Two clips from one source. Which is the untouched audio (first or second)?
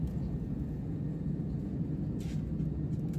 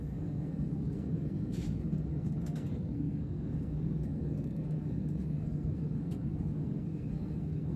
first